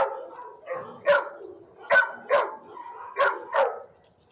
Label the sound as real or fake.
real